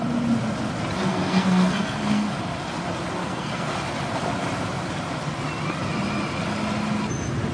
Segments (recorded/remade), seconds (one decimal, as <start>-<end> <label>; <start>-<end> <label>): 0.0-1.1 recorded; 1.1-2.4 remade; 2.4-3.2 recorded; 3.2-3.7 remade; 3.7-7.5 recorded